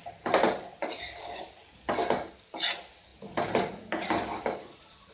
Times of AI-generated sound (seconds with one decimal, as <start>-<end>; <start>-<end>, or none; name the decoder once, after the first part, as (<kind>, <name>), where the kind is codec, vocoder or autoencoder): none